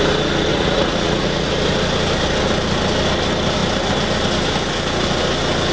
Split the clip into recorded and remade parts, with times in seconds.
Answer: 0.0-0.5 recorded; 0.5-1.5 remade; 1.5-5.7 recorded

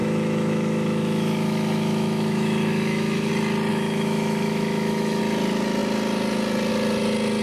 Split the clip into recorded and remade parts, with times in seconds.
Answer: 0.0-3.3 remade; 3.3-3.7 recorded; 3.7-5.2 remade; 5.2-7.4 recorded

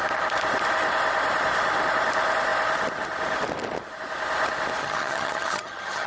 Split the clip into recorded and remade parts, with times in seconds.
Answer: 0.0-4.8 recorded; 4.8-6.1 remade

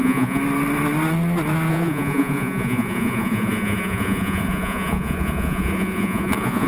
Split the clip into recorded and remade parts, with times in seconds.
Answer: 0.0-0.4 remade; 0.4-1.7 recorded; 1.7-6.7 remade

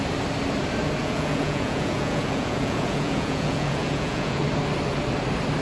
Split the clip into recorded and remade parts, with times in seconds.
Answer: 0.0-1.0 recorded; 1.0-4.4 remade; 4.4-5.6 recorded